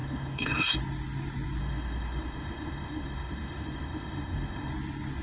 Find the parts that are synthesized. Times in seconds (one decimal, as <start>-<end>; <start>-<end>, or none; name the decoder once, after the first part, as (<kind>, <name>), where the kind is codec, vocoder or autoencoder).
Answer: 0.0-0.8 (autoencoder, DAC-VAE); 1.6-4.7